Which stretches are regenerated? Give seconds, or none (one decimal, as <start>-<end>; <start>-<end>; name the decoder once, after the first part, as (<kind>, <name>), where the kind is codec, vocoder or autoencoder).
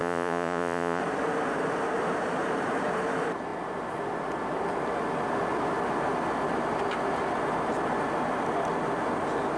0.0-1.0 (vocoder, Vocos)